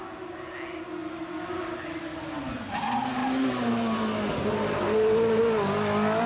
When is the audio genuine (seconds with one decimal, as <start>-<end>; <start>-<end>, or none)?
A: 0.0-6.3